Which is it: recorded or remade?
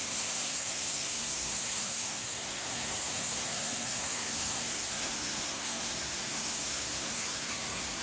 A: remade